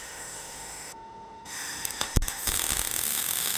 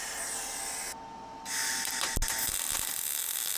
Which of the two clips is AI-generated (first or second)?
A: first